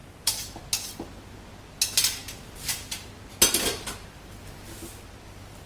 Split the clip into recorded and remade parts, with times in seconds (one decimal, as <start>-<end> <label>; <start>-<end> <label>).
0.0-0.6 remade; 0.6-5.7 recorded